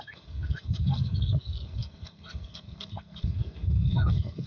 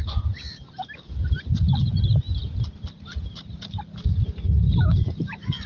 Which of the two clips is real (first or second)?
second